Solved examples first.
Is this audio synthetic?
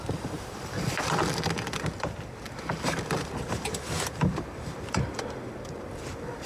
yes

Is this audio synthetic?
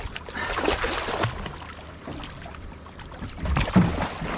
no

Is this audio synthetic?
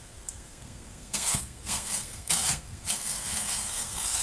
yes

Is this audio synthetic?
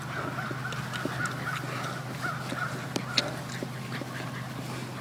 no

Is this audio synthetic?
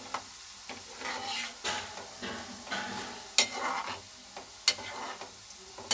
no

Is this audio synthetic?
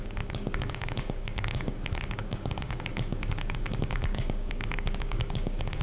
yes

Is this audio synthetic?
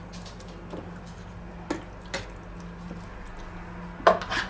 no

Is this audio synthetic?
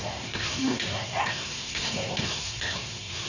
yes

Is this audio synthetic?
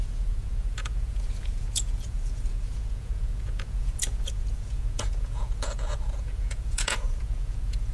yes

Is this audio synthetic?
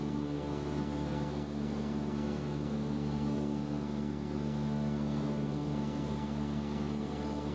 yes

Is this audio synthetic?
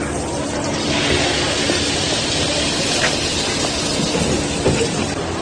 yes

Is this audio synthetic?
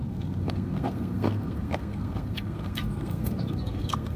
yes